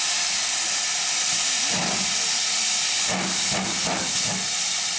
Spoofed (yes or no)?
no